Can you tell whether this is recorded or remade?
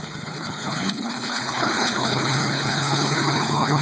remade